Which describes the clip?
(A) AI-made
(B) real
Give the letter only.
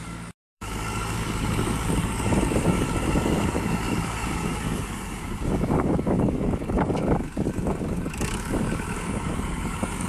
A